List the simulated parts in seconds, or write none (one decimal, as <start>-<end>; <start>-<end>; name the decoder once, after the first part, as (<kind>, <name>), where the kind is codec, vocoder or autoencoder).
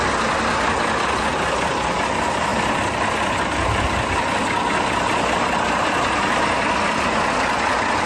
none